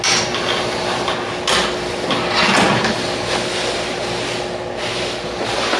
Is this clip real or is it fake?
real